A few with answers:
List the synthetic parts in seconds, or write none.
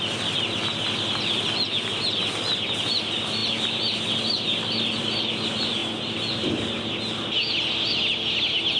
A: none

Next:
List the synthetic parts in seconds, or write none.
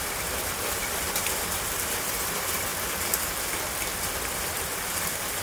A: 0.0-2.7 (vocoder, BigVGAN v2); 4.4-5.4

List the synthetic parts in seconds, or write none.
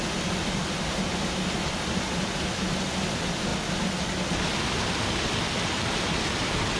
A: none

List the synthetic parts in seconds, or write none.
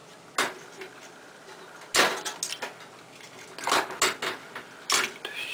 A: none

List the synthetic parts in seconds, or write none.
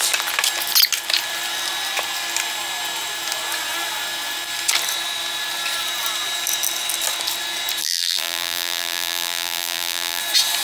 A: 7.8-10.2 (vocoder, BigVGAN v2)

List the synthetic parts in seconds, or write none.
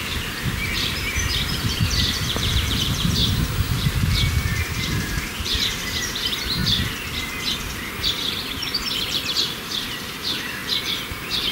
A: 0.0-6.6 (vocoder, BigVGAN v2); 9.0-11.5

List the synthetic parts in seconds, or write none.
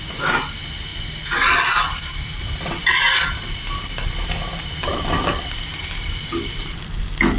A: 4.9-7.0 (vocoder, BigVGAN v2)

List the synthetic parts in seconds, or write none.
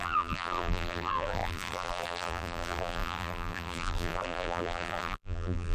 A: 0.0-5.7 (vocoder, BigVGAN v2)